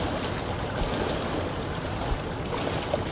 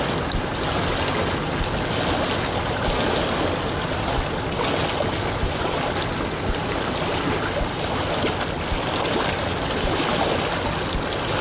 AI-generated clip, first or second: first